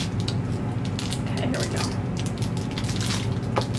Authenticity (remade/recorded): recorded